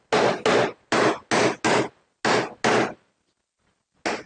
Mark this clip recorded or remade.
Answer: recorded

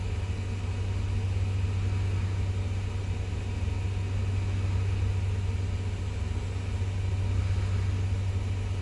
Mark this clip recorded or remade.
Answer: recorded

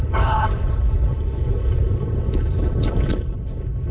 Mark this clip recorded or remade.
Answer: remade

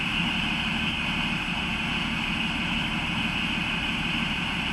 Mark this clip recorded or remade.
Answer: recorded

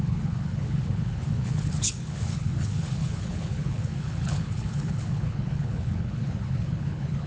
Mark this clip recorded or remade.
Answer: remade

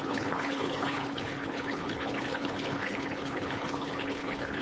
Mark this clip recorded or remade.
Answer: remade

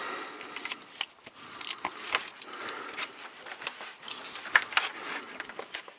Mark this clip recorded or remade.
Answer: recorded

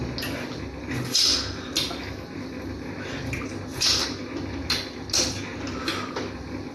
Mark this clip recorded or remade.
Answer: recorded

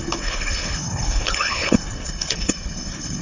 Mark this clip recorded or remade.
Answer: remade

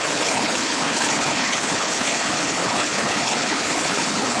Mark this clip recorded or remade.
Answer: remade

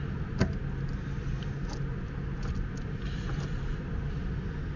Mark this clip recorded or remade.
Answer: recorded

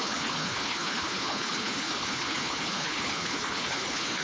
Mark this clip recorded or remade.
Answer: remade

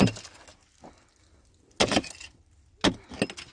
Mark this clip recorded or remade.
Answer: recorded